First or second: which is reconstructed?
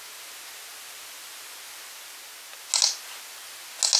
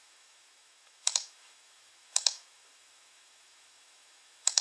second